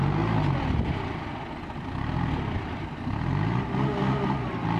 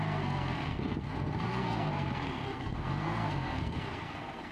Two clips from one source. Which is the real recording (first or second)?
first